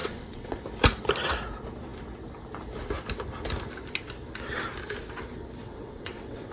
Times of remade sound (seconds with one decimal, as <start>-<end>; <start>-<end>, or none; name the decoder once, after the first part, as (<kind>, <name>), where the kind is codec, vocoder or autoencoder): 0.0-0.6 (vocoder, WaveNeXt); 5.6-6.5